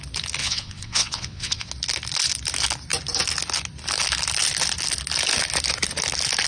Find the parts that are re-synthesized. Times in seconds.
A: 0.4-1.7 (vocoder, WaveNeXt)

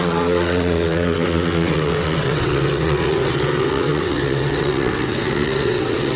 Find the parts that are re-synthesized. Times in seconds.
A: 0.0-6.2 (vocoder, WaveNeXt)